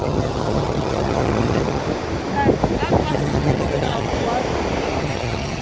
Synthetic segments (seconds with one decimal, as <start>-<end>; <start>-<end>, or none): 0.0-1.8; 3.1-4.1; 5.0-5.6